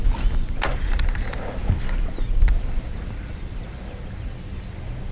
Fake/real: real